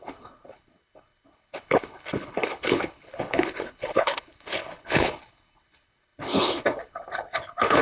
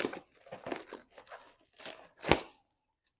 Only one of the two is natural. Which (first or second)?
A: second